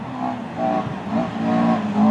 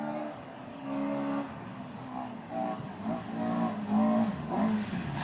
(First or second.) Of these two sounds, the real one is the first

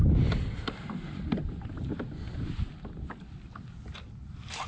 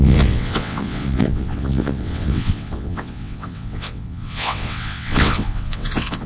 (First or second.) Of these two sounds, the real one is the first